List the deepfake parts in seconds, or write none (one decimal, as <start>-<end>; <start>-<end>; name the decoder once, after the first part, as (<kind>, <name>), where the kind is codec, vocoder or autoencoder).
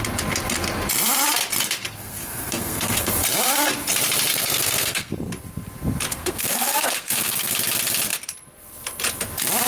2.0-3.1 (codec, SNAC); 4.3-5.1; 6.1-7.5